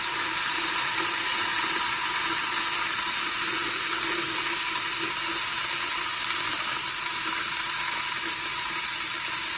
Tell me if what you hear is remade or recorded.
recorded